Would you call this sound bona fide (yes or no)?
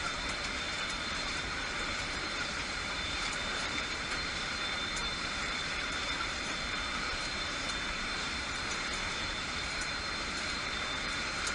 no